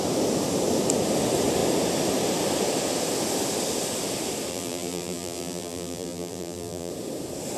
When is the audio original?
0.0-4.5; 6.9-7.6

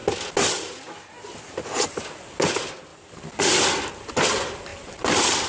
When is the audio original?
0.0-2.9; 3.9-5.5